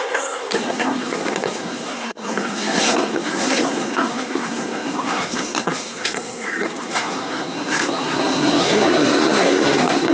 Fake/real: fake